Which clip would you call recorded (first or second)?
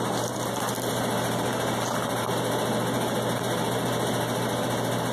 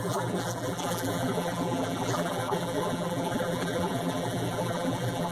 first